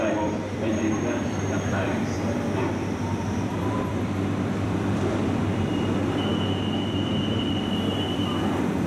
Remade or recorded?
remade